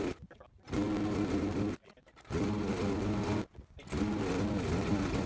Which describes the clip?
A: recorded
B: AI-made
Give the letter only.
A